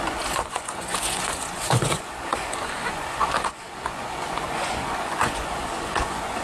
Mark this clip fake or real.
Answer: fake